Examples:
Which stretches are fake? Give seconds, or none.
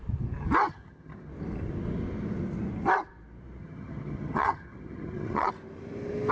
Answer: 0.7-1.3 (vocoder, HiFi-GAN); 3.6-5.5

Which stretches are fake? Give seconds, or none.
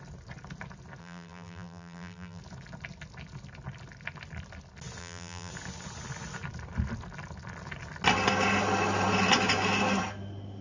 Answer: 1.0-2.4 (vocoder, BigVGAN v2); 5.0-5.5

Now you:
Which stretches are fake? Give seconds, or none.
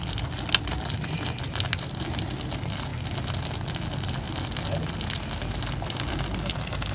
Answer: none